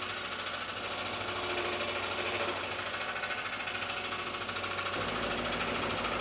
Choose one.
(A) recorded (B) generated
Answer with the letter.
A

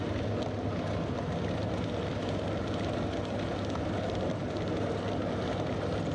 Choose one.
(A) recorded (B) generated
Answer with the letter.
A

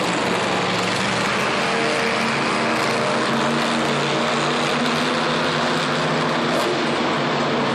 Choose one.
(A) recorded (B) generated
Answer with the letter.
A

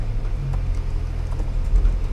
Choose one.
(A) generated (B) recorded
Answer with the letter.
B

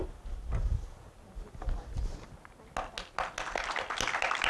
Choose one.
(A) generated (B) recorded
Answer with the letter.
B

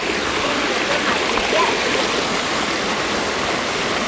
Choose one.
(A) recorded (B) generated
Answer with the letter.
A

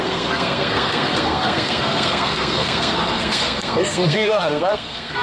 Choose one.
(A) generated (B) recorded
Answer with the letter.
A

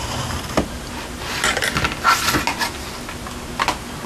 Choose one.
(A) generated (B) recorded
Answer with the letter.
B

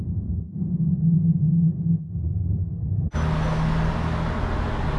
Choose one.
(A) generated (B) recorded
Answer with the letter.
B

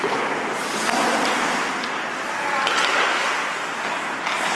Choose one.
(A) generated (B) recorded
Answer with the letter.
B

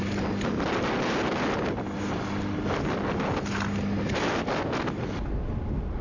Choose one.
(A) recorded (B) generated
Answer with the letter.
A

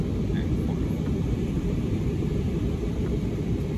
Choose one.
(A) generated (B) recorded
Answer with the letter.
A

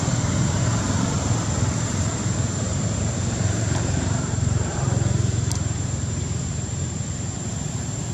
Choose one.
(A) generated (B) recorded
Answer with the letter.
A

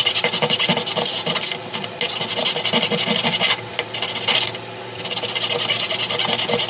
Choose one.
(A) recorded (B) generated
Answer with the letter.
A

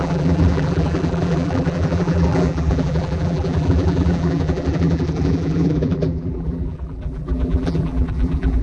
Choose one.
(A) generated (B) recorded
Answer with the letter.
A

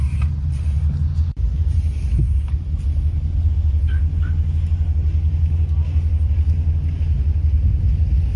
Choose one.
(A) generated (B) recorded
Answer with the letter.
B